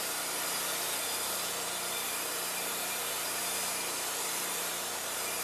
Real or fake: fake